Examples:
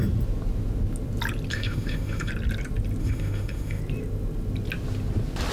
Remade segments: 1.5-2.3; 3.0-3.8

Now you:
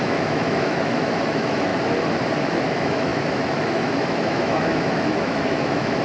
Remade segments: 0.0-1.7; 2.4-6.0

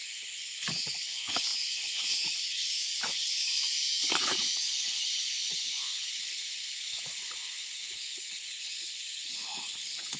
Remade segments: 0.0-10.2

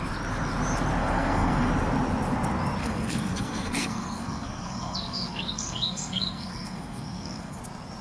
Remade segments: 1.0-1.7; 2.8-7.6